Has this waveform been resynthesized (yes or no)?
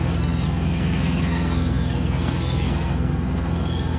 yes